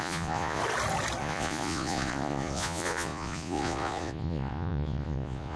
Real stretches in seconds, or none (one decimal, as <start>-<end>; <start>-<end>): 0.6-1.2